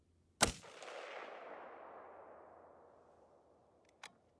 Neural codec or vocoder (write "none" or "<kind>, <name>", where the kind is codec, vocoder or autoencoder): none